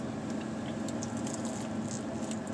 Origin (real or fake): real